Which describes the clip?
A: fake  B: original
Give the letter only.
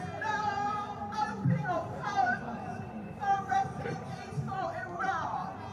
A